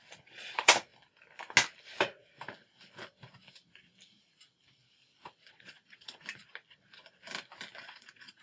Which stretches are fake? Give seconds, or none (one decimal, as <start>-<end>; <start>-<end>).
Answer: 0.0-0.9; 5.5-6.2; 7.8-8.4

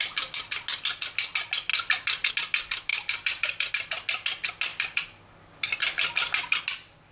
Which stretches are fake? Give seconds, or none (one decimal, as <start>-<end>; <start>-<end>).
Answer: 2.9-3.7; 4.7-5.2

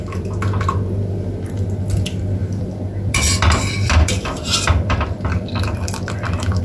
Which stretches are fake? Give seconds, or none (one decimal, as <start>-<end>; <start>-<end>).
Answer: 2.4-6.6

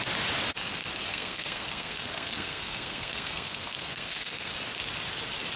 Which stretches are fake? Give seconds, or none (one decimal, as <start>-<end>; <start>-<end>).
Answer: 1.1-4.5

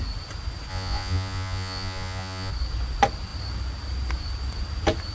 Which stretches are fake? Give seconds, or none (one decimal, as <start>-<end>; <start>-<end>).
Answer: 0.7-2.5

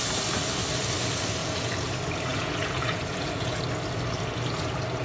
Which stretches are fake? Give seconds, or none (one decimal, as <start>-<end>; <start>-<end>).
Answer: 1.4-1.9; 2.3-3.6